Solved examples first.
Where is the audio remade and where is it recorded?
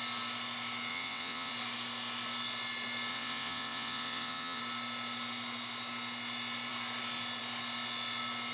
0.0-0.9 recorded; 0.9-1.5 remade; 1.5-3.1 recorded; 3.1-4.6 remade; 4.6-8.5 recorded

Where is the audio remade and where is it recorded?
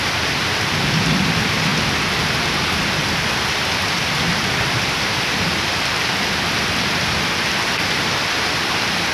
0.0-1.7 remade; 1.7-3.2 recorded; 3.2-9.1 remade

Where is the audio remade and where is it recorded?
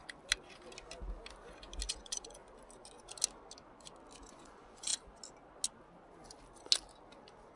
0.0-1.9 recorded; 1.9-2.4 remade; 2.4-4.3 recorded; 4.3-4.9 remade; 4.9-7.6 recorded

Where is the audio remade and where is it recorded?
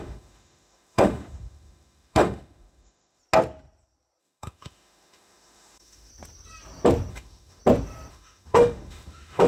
0.0-3.2 remade; 3.2-4.2 recorded; 4.2-6.1 remade; 6.1-7.1 recorded; 7.1-7.6 remade; 7.6-8.1 recorded; 8.1-9.5 remade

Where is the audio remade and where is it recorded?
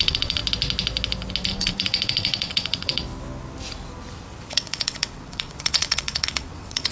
0.0-0.4 remade; 0.4-1.5 recorded; 1.5-3.1 remade; 3.1-4.5 recorded; 4.5-6.9 remade